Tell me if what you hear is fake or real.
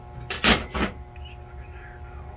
real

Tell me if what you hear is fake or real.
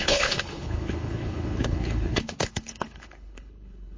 fake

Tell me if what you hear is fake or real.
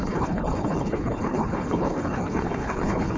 fake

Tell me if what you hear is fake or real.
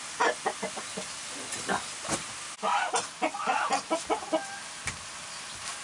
real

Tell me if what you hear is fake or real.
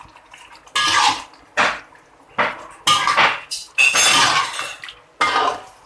real